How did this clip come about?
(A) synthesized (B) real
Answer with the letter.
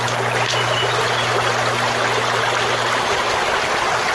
B